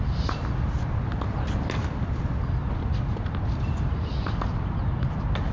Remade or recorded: recorded